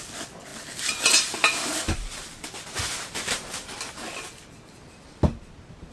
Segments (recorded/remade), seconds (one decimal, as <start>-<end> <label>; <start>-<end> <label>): 0.0-5.9 recorded